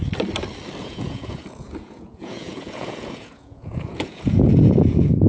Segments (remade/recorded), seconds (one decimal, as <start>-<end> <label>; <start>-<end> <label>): 0.0-0.8 recorded; 0.8-5.3 remade